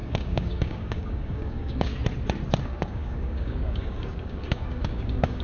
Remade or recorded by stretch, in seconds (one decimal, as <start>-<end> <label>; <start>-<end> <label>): 0.0-1.9 remade; 1.9-2.6 recorded; 2.6-5.4 remade